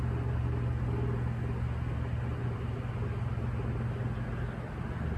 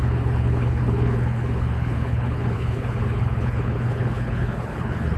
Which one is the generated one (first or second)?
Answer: second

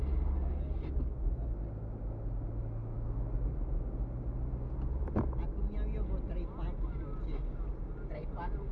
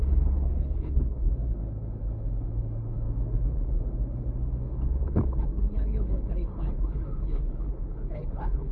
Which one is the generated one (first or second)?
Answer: second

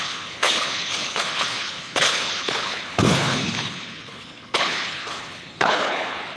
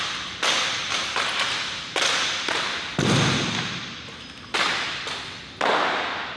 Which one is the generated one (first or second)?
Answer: first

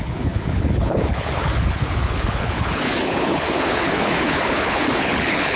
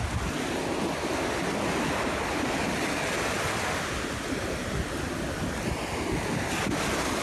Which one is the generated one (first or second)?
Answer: first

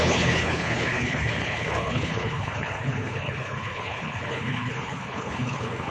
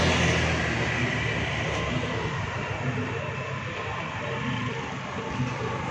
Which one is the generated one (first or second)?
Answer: first